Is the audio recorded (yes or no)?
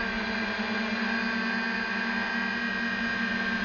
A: yes